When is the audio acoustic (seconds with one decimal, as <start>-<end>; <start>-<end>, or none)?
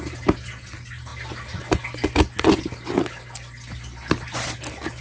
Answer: 0.0-5.0